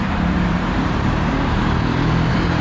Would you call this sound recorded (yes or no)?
no